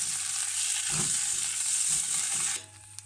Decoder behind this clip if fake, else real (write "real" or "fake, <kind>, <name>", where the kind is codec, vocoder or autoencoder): fake, vocoder, BigVGAN v2